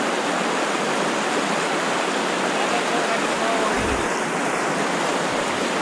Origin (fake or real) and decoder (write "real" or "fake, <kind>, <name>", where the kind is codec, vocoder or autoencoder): real